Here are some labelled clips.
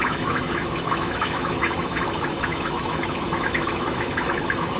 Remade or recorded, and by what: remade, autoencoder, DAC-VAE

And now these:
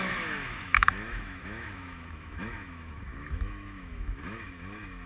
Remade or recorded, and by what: remade, autoencoder, DAC-VAE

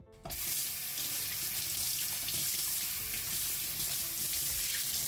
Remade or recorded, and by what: recorded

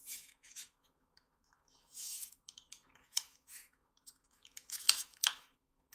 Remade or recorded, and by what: remade, autoencoder, DAC-VAE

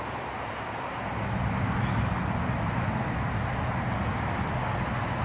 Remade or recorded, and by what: recorded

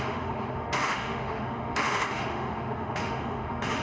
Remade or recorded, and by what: remade, autoencoder, DAC-VAE